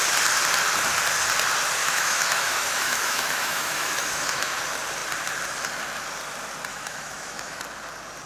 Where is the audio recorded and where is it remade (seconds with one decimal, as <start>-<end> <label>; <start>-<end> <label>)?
0.0-1.8 recorded; 1.8-4.6 remade; 4.6-6.7 recorded; 6.7-7.6 remade; 7.6-8.3 recorded